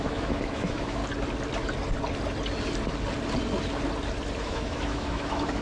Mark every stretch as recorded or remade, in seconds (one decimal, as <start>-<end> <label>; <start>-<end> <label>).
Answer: 0.0-1.0 remade; 1.0-4.4 recorded; 4.4-5.6 remade